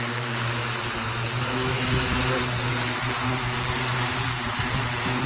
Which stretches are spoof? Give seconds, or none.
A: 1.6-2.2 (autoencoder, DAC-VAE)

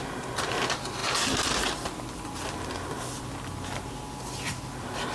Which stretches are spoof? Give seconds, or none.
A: none

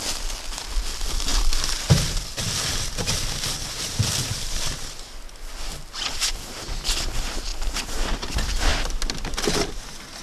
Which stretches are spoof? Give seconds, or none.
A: 3.5-4.7 (vocoder, BigVGAN v2)

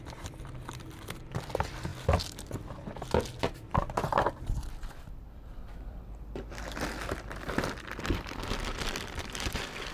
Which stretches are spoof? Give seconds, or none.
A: 0.0-1.9 (vocoder, BigVGAN v2); 3.4-9.9

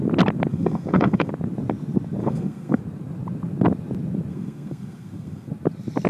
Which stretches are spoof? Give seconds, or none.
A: 0.5-1.3 (codec, SNAC); 2.2-2.8; 4.3-5.5

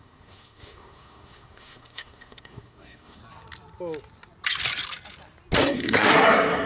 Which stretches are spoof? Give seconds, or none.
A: 0.0-3.2 (codec, SNAC); 5.6-6.7

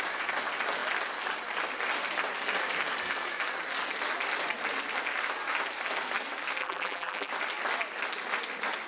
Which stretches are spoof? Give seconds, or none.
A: 6.6-7.3 (vocoder, BigVGAN v2)